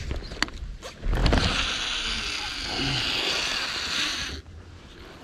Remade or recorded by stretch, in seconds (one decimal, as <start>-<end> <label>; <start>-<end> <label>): 0.0-5.2 recorded